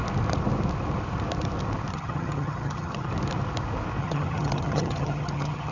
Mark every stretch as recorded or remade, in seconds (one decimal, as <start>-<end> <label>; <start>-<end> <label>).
0.0-1.9 recorded; 1.9-3.1 remade; 3.1-4.0 recorded; 4.0-5.7 remade